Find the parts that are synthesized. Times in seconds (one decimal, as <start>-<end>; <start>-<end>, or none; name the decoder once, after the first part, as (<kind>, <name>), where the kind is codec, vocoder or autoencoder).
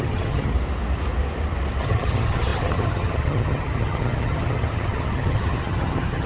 0.0-0.5 (vocoder, HiFi-GAN); 1.8-6.3